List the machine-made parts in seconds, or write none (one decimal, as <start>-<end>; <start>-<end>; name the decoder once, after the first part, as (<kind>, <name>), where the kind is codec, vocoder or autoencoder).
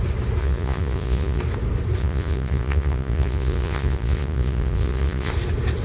0.4-1.4 (vocoder, Vocos); 2.0-5.3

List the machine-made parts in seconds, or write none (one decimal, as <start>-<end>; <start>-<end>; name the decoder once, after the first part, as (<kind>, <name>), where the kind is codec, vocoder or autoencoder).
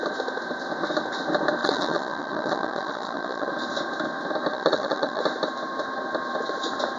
1.6-3.5 (vocoder, Vocos); 4.5-5.2